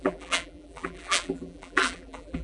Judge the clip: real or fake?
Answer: fake